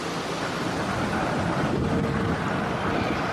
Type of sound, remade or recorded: recorded